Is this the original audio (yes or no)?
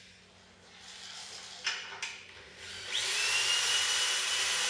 yes